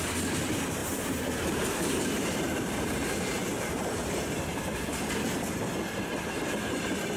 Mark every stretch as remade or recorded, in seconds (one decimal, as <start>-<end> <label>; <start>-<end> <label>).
0.0-0.8 recorded; 0.8-5.1 remade; 5.1-7.2 recorded